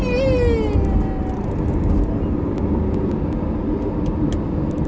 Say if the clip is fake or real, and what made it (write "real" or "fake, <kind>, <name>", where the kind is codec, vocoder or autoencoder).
real